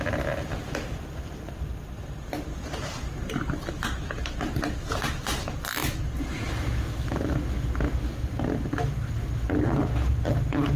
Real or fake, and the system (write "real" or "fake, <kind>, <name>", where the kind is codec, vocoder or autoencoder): real